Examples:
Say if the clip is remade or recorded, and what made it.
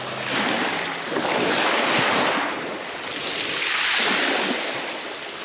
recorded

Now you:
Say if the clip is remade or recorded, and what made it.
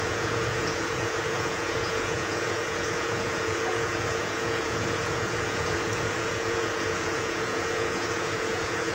remade, vocoder, Vocos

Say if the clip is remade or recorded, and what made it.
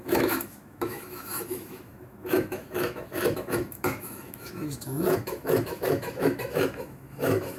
remade, autoencoder, DAC-VAE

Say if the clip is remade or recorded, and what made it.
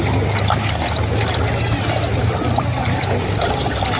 recorded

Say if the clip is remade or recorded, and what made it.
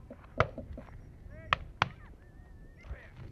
recorded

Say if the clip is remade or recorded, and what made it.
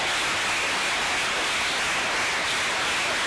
recorded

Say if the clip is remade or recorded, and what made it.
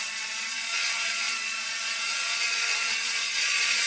remade, vocoder, Vocos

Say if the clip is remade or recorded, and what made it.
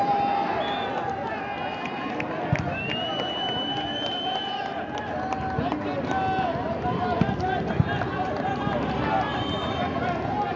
recorded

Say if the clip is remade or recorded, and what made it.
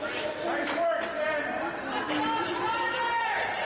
recorded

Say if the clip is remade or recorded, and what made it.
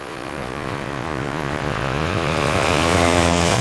remade, vocoder, Vocos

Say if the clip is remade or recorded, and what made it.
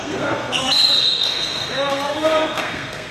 remade, codec, SNAC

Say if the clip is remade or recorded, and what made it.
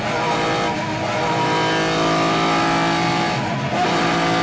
recorded